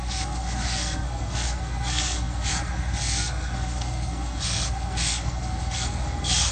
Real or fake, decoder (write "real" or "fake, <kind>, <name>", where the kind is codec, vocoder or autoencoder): fake, codec, SNAC